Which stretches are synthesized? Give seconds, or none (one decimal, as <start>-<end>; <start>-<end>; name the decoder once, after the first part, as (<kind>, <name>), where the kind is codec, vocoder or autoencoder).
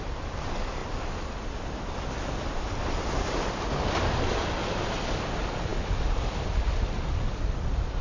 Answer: none